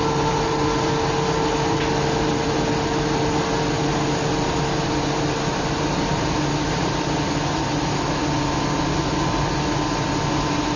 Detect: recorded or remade recorded